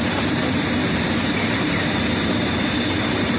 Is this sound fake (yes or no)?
yes